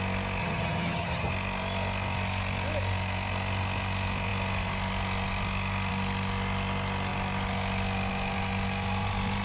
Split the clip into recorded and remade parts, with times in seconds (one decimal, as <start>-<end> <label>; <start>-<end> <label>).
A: 0.0-0.4 recorded; 0.4-1.3 remade; 1.3-9.4 recorded